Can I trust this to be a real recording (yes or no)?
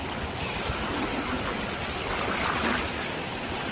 yes